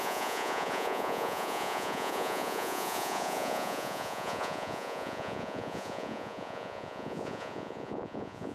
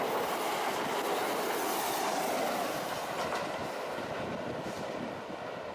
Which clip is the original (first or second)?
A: second